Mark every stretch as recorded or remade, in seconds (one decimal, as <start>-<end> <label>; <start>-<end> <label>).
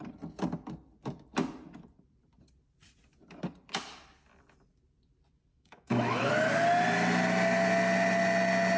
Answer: 0.0-5.5 recorded; 5.5-6.3 remade; 6.3-8.8 recorded